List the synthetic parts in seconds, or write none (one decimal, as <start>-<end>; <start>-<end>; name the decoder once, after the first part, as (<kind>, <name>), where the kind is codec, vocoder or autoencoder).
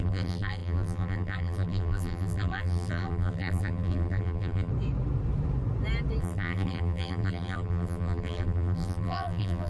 0.0-4.7 (vocoder, BigVGAN v2); 6.2-9.7